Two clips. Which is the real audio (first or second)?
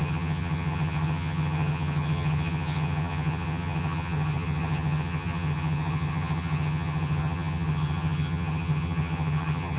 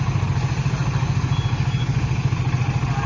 second